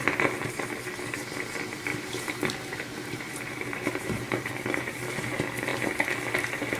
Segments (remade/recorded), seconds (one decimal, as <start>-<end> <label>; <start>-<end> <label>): 0.0-1.9 recorded; 1.9-4.5 remade; 4.5-6.8 recorded